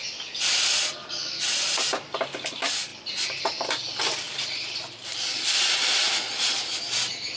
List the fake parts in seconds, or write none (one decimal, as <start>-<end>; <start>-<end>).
0.0-2.9; 3.4-7.4